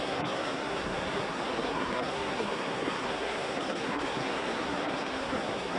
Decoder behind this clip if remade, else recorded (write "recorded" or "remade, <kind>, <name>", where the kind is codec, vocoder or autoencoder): remade, codec, SNAC